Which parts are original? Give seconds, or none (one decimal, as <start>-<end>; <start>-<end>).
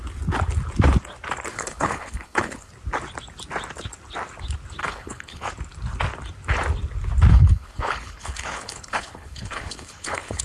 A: 0.0-1.5; 2.7-4.8; 5.5-7.3